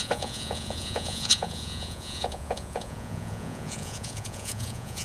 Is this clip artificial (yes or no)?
yes